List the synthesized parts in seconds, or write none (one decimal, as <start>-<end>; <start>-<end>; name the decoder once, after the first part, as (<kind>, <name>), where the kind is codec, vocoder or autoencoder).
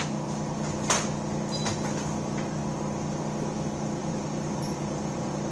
4.0-5.5 (vocoder, BigVGAN v2)